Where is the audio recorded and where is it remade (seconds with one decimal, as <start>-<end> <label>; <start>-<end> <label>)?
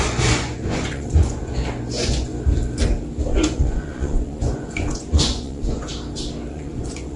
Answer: 0.0-2.3 remade; 2.3-3.3 recorded; 3.3-5.9 remade; 5.9-6.5 recorded; 6.5-7.2 remade